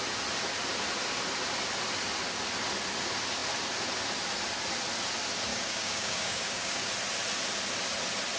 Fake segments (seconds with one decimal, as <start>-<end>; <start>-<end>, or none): 5.5-6.9